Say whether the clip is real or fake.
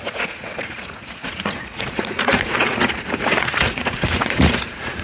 fake